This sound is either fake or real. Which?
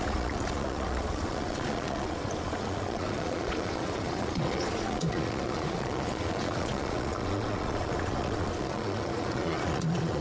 fake